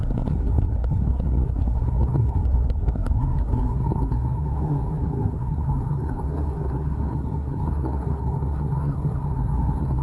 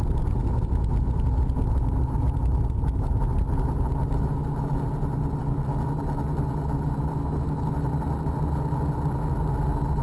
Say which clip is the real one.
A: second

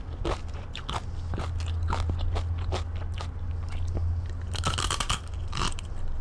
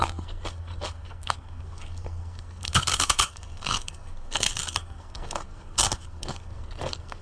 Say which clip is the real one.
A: first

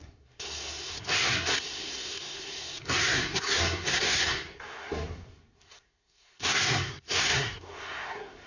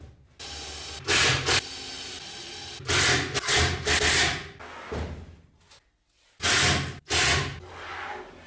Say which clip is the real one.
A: second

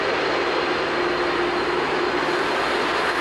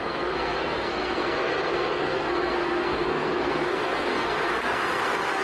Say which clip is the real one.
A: first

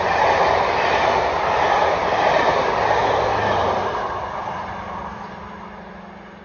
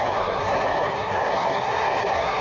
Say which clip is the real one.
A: first